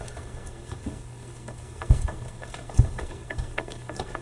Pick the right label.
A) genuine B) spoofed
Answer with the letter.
B